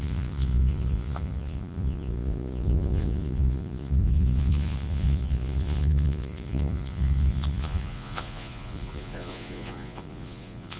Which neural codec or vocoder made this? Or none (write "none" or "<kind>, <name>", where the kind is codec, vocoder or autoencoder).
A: vocoder, Vocos